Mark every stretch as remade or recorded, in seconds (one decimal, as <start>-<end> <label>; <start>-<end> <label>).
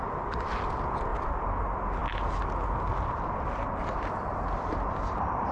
0.0-5.5 recorded